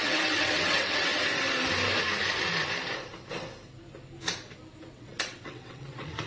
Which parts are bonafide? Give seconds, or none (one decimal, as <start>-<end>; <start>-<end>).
1.1-4.9